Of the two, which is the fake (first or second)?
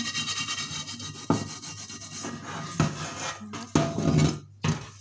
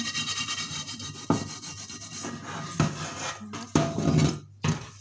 second